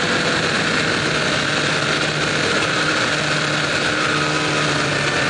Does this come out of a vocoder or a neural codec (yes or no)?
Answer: no